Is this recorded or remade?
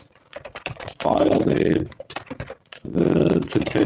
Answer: remade